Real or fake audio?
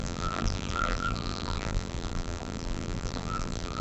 fake